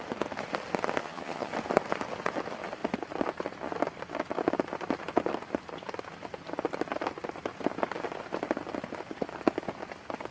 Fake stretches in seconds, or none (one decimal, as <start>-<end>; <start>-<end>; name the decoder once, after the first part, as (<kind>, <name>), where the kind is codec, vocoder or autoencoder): 1.0-1.5 (vocoder, HiFi-GAN)